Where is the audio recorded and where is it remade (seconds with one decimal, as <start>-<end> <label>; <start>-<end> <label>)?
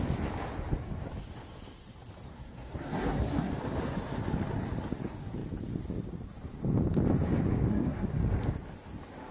0.0-2.3 recorded; 2.3-3.5 remade; 3.5-7.7 recorded; 7.7-8.2 remade; 8.2-9.3 recorded